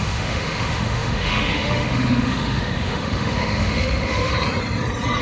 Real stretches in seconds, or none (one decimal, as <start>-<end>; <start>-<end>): 4.3-5.2